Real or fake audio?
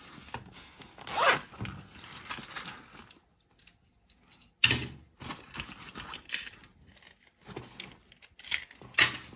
real